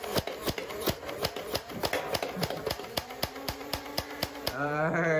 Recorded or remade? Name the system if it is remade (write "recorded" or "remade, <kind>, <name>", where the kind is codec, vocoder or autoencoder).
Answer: remade, vocoder, BigVGAN v2